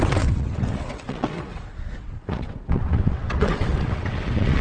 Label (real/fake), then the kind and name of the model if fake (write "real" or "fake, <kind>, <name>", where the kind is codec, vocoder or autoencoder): fake, vocoder, WaveNeXt